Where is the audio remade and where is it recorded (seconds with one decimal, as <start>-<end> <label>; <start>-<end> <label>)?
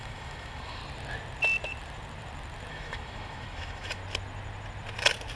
0.0-0.8 remade; 0.8-2.7 recorded; 2.7-4.0 remade; 4.0-5.4 recorded